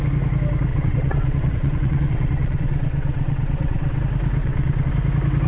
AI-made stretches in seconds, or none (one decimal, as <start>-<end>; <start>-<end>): 0.7-4.0; 4.4-4.9